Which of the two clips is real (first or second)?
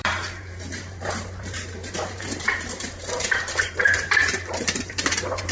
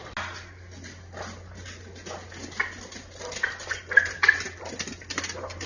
second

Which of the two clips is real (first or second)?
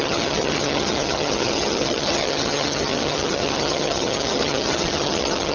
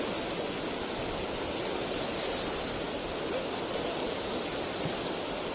second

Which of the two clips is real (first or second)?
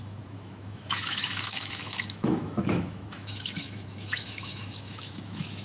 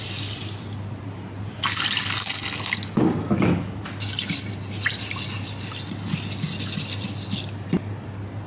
second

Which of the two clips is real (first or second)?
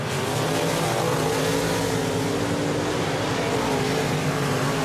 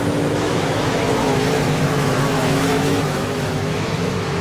first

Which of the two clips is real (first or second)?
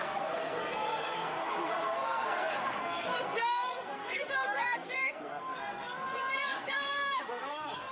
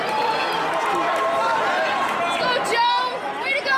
second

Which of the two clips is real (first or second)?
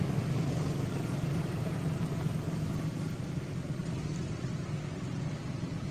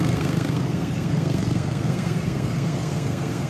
first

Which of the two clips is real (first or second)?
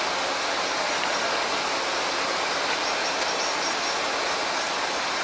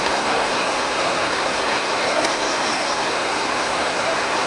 first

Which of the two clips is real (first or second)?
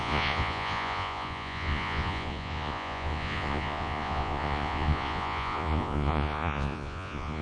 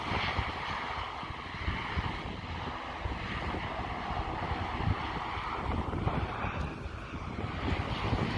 second